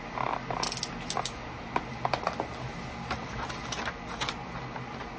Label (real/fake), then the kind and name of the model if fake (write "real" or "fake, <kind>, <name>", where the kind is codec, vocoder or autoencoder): real